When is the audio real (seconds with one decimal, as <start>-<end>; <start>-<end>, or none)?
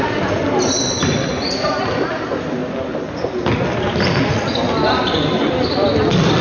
0.0-6.4